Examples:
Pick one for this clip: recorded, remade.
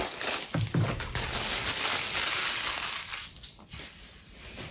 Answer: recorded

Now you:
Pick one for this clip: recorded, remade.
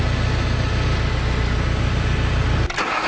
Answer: recorded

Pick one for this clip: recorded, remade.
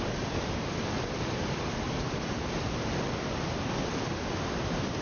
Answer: remade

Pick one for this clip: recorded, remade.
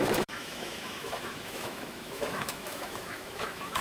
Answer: remade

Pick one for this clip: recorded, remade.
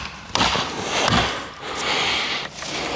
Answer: recorded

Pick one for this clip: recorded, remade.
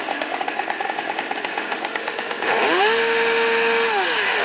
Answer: remade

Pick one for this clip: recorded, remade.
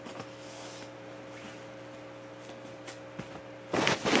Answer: recorded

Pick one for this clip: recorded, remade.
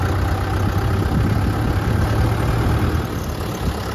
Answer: recorded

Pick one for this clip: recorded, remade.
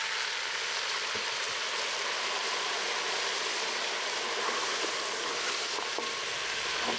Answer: recorded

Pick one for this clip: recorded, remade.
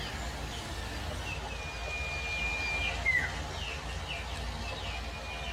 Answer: recorded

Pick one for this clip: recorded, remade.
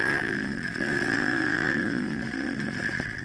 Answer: remade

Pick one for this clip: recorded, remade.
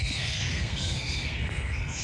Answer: remade